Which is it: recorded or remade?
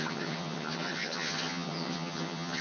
remade